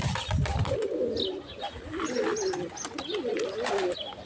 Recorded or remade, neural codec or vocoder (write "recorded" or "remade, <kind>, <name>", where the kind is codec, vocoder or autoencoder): recorded